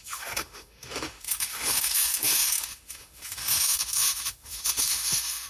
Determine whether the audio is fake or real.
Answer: fake